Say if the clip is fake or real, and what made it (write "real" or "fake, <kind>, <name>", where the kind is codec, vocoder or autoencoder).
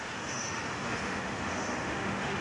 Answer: fake, autoencoder, DAC-VAE